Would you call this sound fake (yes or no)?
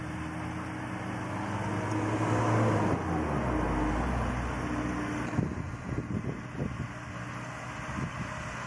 no